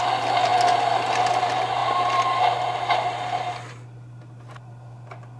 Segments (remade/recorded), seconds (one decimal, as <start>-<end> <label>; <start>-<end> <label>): 0.0-5.4 recorded